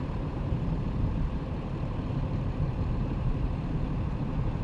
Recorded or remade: remade